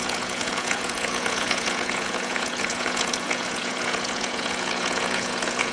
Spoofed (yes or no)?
yes